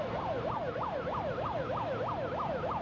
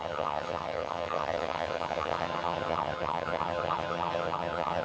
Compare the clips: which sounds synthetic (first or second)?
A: second